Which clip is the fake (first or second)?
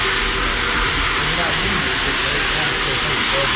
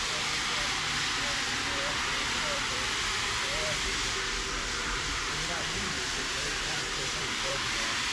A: second